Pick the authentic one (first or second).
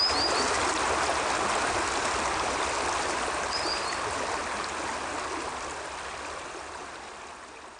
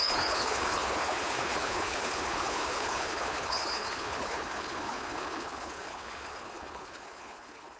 first